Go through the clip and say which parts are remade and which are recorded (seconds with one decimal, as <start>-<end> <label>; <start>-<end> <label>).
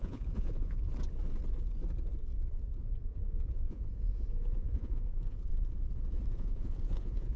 0.0-0.9 remade; 0.9-3.0 recorded; 3.0-5.5 remade; 5.5-6.3 recorded; 6.3-7.4 remade